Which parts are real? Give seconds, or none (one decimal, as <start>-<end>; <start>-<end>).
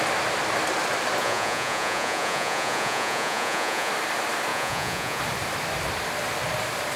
0.0-1.2; 3.9-4.5; 5.2-7.0